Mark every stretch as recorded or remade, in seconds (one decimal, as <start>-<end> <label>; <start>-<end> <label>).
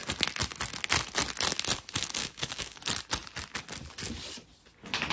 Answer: 0.0-2.2 recorded; 2.2-2.8 remade; 2.8-5.1 recorded